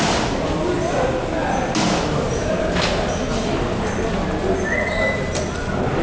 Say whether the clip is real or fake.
real